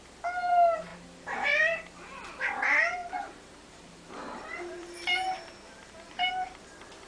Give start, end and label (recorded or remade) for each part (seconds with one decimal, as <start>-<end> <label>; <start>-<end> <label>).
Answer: 0.0-3.0 recorded; 3.0-6.3 remade; 6.3-7.1 recorded